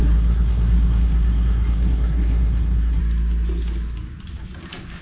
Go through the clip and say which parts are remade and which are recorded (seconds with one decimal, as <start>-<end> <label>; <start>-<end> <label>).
0.0-3.0 remade; 3.0-5.0 recorded